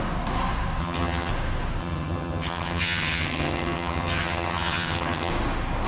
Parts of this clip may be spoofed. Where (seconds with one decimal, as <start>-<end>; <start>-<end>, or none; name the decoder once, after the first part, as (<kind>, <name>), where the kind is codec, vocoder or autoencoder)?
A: 0.8-1.3 (vocoder, HiFi-GAN); 1.8-5.3